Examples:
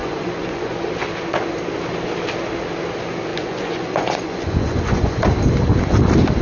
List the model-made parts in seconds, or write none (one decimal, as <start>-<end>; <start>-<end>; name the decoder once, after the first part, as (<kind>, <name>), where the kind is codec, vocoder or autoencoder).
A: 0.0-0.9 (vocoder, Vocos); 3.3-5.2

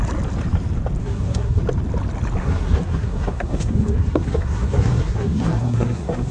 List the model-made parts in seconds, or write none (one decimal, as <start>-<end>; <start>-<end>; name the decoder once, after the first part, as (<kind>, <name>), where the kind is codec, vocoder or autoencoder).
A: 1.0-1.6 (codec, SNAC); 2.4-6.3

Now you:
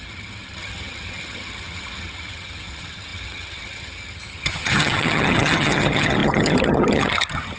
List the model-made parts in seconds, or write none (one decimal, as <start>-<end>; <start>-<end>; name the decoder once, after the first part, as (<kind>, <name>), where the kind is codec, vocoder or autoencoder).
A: 0.0-7.6 (vocoder, HiFi-GAN)